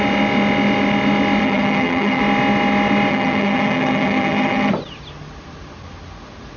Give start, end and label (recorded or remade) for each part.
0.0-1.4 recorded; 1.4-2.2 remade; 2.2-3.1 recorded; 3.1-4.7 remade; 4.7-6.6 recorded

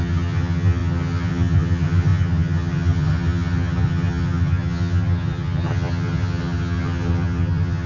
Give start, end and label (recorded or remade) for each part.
0.0-7.9 remade

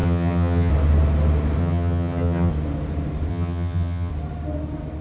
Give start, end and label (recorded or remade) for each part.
0.0-0.7 remade; 0.7-1.6 recorded; 1.6-2.5 remade; 2.5-3.3 recorded; 3.3-4.1 remade; 4.1-5.0 recorded

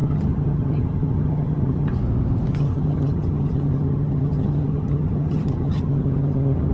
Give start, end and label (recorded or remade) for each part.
0.0-1.9 remade; 1.9-2.5 recorded; 2.5-6.7 remade

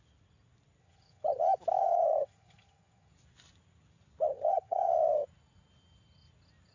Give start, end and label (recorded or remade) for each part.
0.0-0.8 recorded; 0.8-1.4 remade; 1.4-1.8 recorded; 1.8-3.1 remade; 3.1-4.3 recorded; 4.3-4.9 remade; 4.9-6.7 recorded

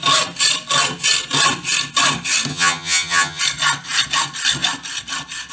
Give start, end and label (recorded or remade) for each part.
0.0-2.5 recorded; 2.5-3.4 remade; 3.4-5.5 recorded

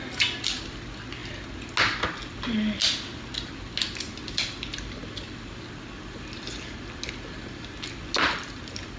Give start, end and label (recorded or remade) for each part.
0.0-9.0 recorded

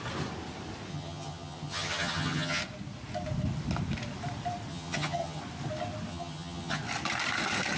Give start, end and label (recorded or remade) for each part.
0.0-0.9 recorded; 0.9-2.6 remade; 2.6-4.7 recorded; 4.7-5.4 remade; 5.4-6.1 recorded; 6.1-6.8 remade; 6.8-7.8 recorded